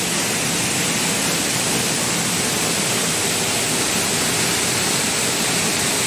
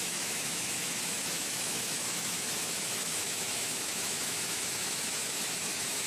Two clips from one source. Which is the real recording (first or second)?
first